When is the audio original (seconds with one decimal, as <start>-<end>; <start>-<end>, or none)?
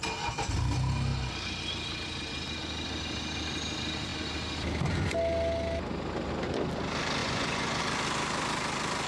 0.0-7.2; 7.8-9.1